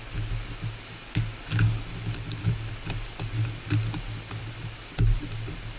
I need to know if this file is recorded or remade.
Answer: recorded